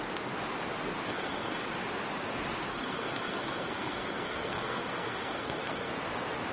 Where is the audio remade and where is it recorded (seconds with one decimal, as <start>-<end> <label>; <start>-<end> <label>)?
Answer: 0.0-1.1 recorded; 1.1-1.7 remade; 1.7-2.7 recorded; 2.7-5.9 remade; 5.9-6.5 recorded

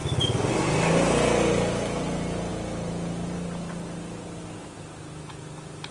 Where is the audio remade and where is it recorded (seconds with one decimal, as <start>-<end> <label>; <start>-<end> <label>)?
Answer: 0.0-5.9 recorded

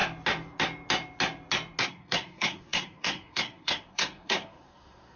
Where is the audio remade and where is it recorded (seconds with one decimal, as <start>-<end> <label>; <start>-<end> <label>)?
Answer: 0.0-1.8 recorded; 1.8-5.2 remade